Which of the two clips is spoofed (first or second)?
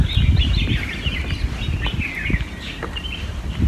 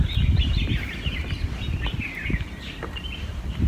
second